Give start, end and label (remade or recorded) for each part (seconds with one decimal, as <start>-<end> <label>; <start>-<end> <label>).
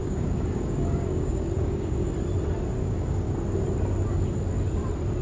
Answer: 0.0-2.1 remade; 2.1-2.8 recorded; 2.8-3.3 remade; 3.3-5.2 recorded